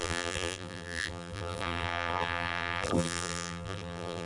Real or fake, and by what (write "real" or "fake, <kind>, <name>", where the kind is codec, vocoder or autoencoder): fake, vocoder, BigVGAN v2